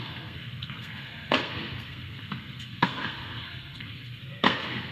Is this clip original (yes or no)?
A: no